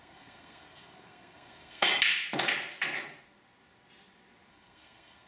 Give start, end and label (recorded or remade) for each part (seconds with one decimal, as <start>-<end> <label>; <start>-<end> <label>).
0.0-1.9 remade; 1.9-4.5 recorded; 4.5-5.3 remade